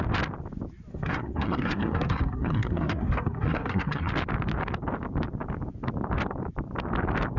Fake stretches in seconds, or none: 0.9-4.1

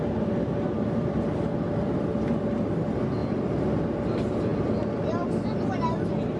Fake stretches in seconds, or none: 3.2-3.8; 4.5-5.3

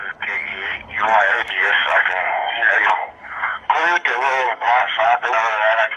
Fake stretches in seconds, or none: 0.5-3.1; 3.5-6.0